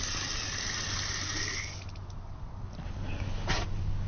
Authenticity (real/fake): real